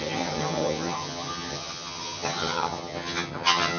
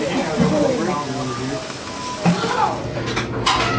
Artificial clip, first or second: first